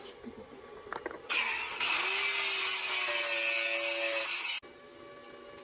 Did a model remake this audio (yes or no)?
no